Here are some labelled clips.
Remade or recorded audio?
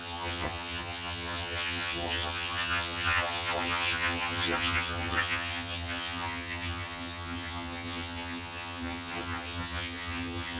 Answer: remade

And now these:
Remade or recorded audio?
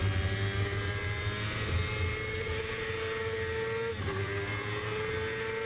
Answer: recorded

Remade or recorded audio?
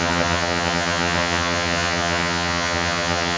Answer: remade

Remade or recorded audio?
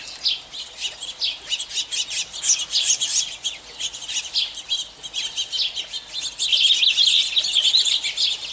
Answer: recorded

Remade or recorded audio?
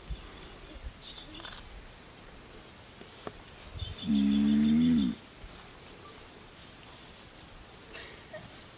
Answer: recorded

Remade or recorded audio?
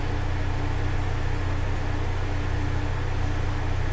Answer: recorded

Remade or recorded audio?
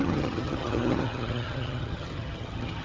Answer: remade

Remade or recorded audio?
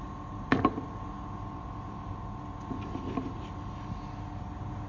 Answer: recorded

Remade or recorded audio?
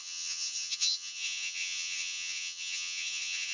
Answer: remade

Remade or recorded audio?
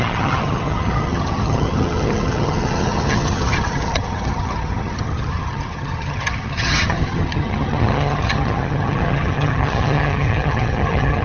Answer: remade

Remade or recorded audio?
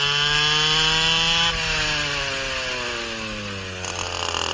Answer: recorded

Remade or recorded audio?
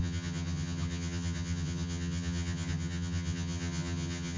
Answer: remade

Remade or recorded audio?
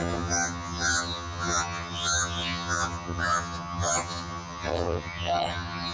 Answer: remade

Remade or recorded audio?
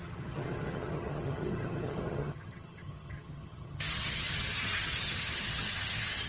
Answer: remade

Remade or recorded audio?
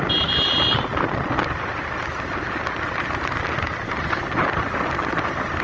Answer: recorded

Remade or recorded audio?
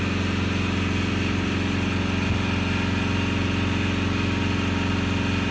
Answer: recorded